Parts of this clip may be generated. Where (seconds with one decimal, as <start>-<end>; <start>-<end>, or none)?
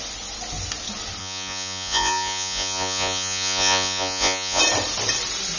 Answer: 1.2-4.6